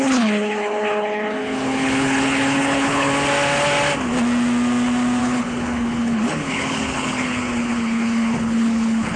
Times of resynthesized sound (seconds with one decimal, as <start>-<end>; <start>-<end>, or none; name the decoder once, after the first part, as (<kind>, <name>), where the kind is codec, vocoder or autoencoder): 0.0-3.1 (codec, HILCodec); 5.2-9.2